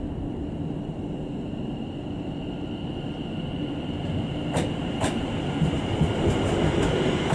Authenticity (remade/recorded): recorded